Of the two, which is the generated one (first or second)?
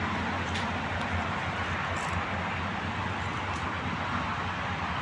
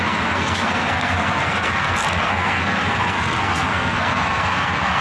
second